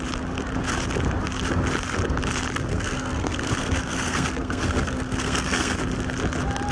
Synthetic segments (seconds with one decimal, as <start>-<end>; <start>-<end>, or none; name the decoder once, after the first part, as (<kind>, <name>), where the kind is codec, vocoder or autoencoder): 2.7-5.8 (codec, SNAC)

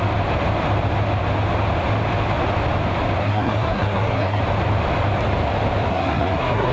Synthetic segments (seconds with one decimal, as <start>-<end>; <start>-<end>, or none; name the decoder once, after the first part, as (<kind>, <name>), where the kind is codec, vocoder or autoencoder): 3.2-4.4 (codec, SNAC); 5.9-6.7

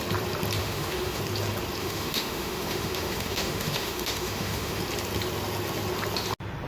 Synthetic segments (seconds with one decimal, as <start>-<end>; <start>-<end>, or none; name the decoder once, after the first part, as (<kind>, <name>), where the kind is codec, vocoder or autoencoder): 0.6-1.2 (autoencoder, DAC-VAE); 1.8-4.8

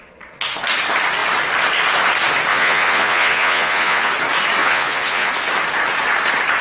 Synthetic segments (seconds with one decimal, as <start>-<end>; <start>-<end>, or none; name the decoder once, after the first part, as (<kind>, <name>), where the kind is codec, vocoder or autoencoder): 2.5-4.1 (vocoder, Vocos); 4.6-5.3